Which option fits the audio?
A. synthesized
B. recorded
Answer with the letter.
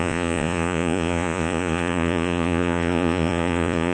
A